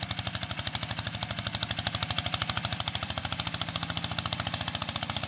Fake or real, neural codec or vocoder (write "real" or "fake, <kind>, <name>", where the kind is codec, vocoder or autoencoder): real